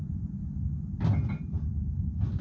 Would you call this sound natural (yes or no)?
yes